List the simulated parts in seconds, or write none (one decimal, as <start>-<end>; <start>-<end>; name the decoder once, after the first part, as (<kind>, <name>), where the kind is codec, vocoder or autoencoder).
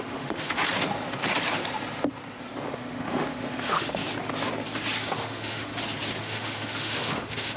0.0-0.6 (autoencoder, DAC-VAE); 2.7-4.0; 5.0-5.7; 6.2-7.6